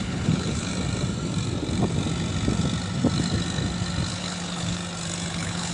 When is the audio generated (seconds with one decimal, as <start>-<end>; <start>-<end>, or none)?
0.0-0.7; 4.1-4.8; 5.3-5.7